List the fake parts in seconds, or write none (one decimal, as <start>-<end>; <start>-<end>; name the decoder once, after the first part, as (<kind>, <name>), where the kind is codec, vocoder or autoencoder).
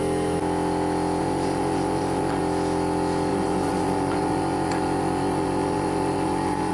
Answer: 1.2-2.4 (vocoder, Vocos); 3.3-6.7